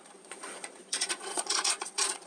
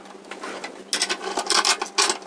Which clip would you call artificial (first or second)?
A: first